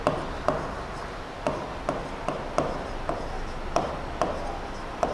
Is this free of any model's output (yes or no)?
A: yes